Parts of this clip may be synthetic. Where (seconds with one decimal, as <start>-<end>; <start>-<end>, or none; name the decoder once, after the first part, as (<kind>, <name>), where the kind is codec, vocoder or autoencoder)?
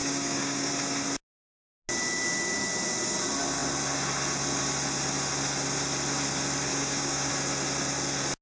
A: 0.0-0.7 (codec, DAC); 6.7-7.3